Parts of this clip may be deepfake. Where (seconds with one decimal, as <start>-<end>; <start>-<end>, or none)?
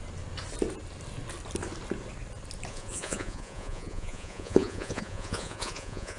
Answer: 2.7-6.2